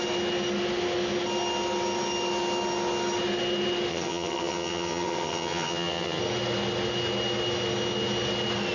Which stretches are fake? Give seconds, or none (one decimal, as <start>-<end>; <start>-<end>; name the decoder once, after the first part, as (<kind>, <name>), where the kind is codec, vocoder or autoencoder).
3.9-6.2 (vocoder, HiFi-GAN)

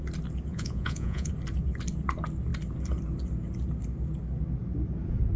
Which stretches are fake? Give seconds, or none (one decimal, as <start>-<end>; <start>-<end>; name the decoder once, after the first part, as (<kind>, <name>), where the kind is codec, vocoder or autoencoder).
0.5-1.3 (vocoder, Vocos)

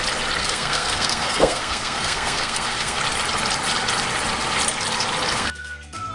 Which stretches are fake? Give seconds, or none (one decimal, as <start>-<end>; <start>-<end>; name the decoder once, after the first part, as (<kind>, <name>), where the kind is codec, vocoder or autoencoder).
0.4-3.0 (codec, SNAC); 5.3-6.1

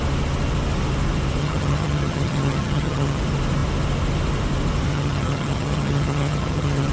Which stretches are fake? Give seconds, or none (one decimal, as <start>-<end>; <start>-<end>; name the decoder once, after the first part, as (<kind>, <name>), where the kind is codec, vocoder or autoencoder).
1.4-3.2 (vocoder, HiFi-GAN); 4.9-6.9

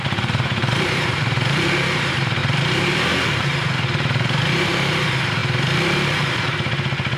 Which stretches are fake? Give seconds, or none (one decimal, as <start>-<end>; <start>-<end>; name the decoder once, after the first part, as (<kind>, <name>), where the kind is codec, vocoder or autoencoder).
0.0-5.4 (vocoder, BigVGAN v2)

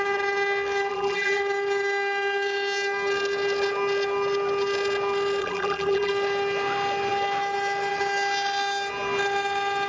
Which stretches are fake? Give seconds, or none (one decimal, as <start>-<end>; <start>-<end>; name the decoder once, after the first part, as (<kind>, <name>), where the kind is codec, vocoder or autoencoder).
0.9-1.4 (vocoder, BigVGAN v2); 5.4-6.1